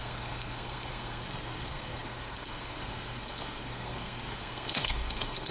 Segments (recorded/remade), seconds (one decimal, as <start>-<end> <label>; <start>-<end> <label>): 0.0-5.5 remade